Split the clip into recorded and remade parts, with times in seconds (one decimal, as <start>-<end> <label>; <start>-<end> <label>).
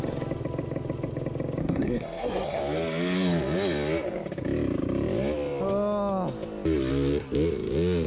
0.0-1.6 recorded; 1.6-2.6 remade; 2.6-8.1 recorded